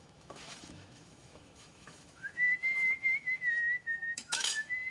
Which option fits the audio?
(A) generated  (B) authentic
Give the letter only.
A